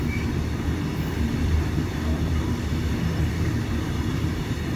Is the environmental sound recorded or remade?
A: remade